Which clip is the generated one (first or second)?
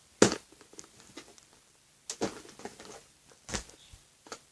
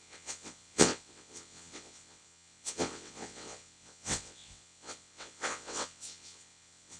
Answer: second